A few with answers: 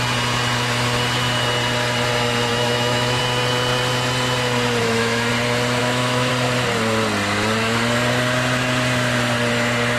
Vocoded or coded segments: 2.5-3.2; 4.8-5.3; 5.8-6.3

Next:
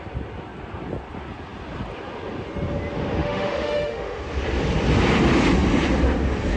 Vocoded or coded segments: 3.2-4.2